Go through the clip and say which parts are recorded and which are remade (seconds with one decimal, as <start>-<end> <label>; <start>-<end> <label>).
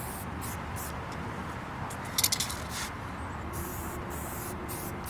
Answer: 0.0-5.1 recorded